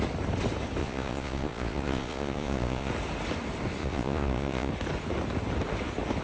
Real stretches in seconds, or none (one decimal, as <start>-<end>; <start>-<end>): 0.0-0.8; 2.9-3.8; 4.7-6.2